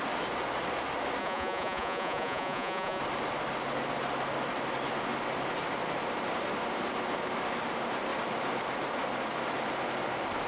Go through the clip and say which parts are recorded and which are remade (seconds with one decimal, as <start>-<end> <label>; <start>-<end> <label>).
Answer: 0.0-1.2 recorded; 1.2-3.0 remade; 3.0-10.5 recorded